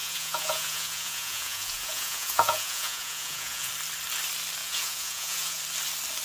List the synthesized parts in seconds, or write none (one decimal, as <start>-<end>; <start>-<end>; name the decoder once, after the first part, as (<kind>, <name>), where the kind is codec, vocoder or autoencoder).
0.0-3.7 (vocoder, Vocos); 4.6-5.6

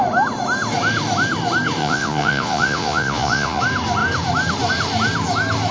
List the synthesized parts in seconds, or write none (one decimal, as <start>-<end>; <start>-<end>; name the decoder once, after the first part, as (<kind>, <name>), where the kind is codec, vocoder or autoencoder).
1.8-3.6 (vocoder, Vocos)